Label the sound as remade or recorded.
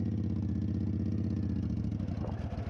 recorded